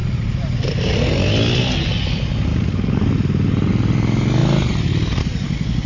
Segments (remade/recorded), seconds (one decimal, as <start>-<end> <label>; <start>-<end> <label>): 0.0-5.9 recorded